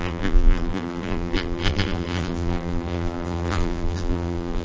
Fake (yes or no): yes